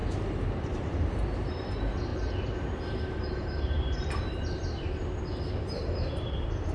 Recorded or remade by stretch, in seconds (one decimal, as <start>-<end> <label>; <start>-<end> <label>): 0.0-2.1 remade; 2.1-3.0 recorded; 3.0-5.0 remade; 5.0-5.8 recorded; 5.8-6.7 remade